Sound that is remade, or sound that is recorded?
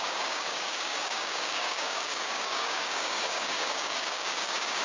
remade